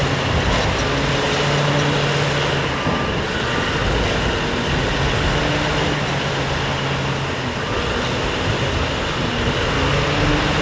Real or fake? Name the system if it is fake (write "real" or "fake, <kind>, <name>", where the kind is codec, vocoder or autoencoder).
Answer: real